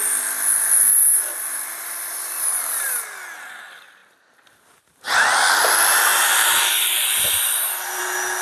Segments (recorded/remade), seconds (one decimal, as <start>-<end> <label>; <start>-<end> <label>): 0.0-1.1 recorded; 1.1-2.1 remade; 2.1-6.1 recorded; 6.1-8.0 remade; 8.0-8.4 recorded